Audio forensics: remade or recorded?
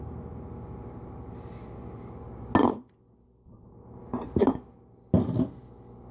recorded